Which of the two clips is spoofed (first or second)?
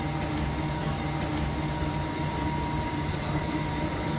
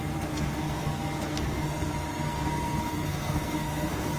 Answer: second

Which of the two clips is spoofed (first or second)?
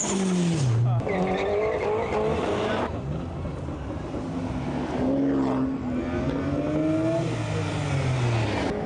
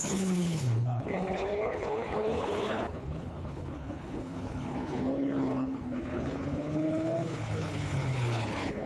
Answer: second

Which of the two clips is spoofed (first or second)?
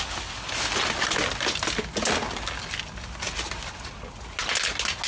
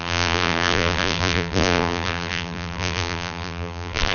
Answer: second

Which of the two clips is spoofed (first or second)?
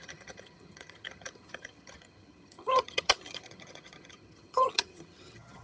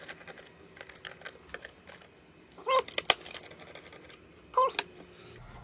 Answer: first